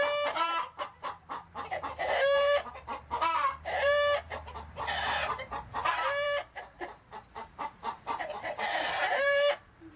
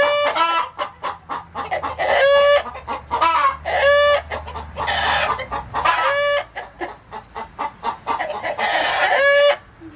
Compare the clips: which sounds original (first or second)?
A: second